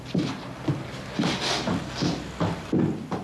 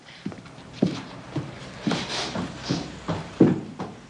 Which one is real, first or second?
first